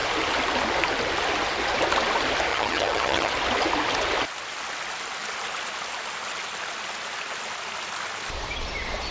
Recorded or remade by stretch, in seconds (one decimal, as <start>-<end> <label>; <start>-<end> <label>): 0.0-2.5 recorded; 2.5-3.3 remade; 3.3-9.1 recorded